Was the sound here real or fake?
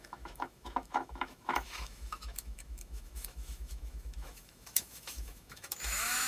fake